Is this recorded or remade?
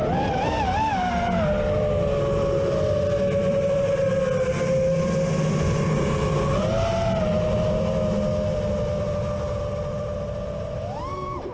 recorded